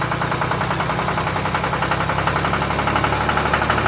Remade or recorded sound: recorded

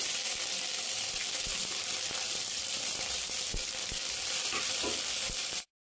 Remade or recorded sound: recorded